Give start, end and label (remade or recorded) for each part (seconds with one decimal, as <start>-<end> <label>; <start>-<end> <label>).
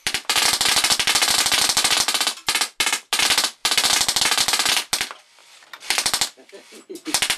0.0-7.4 recorded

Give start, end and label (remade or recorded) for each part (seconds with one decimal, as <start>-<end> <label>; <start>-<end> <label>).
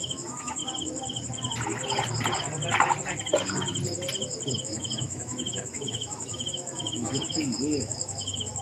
0.0-0.6 remade; 0.6-4.6 recorded; 4.6-8.6 remade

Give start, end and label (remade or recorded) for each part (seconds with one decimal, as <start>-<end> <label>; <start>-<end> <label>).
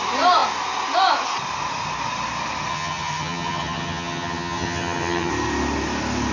0.0-2.7 recorded; 2.7-5.3 remade; 5.3-6.3 recorded